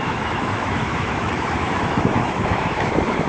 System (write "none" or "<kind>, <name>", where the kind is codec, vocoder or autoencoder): autoencoder, DAC-VAE